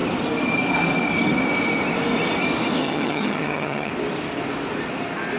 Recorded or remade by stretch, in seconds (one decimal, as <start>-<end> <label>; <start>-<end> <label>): 0.0-2.8 recorded; 2.8-3.9 remade; 3.9-5.4 recorded